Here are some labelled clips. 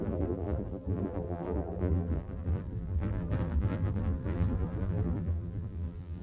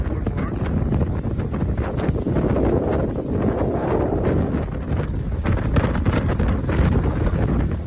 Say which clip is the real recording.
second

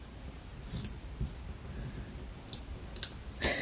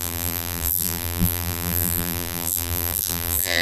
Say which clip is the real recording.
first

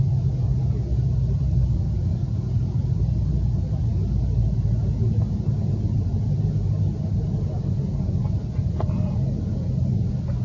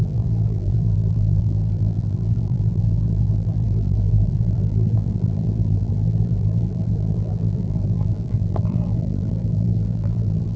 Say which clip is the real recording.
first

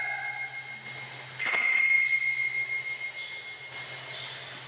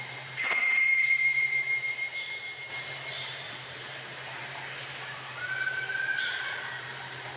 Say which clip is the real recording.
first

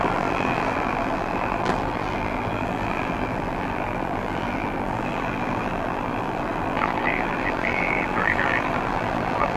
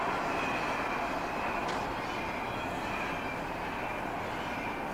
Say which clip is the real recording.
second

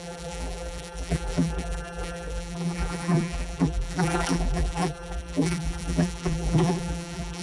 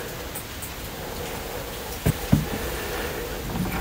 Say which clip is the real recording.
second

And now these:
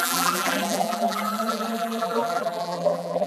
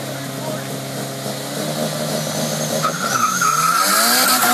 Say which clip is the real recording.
second